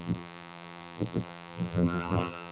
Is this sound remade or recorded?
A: remade